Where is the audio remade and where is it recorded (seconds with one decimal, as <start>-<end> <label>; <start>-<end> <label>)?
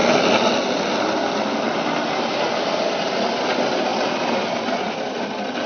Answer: 0.0-5.7 recorded